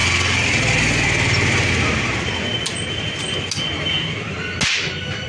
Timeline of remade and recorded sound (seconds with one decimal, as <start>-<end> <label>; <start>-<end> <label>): 0.0-5.3 recorded